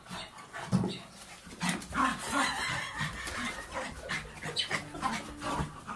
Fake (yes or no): no